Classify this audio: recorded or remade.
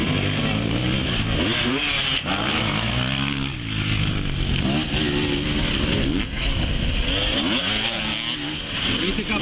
recorded